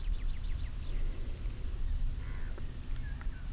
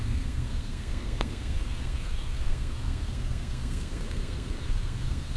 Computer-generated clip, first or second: second